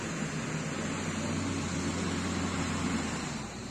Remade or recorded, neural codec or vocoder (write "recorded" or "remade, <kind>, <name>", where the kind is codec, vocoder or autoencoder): recorded